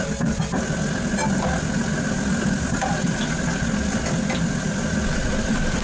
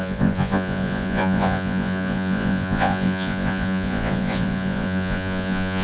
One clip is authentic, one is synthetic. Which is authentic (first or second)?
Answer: first